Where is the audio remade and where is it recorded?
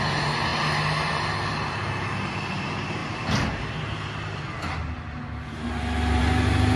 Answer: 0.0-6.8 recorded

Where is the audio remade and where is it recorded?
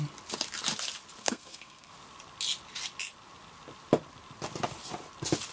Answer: 0.0-1.2 recorded; 1.2-1.9 remade; 1.9-5.5 recorded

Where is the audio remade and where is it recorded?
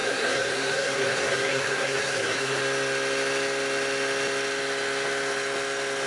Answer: 0.0-2.6 remade; 2.6-6.1 recorded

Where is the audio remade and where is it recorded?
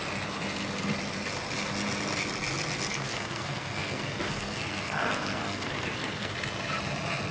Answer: 0.0-2.9 recorded; 2.9-6.3 remade; 6.3-7.3 recorded